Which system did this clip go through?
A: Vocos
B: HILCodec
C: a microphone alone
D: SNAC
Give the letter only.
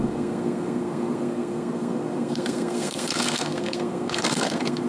D